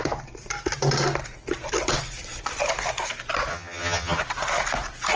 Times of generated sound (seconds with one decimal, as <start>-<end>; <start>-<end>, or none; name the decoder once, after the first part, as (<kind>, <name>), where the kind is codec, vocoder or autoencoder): 3.5-4.2 (vocoder, HiFi-GAN)